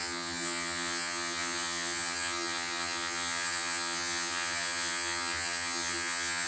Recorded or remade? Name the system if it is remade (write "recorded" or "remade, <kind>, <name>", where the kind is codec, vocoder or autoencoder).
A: remade, vocoder, HiFi-GAN